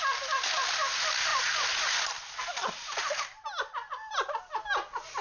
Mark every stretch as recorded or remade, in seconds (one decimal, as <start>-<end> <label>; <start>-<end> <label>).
0.0-5.2 recorded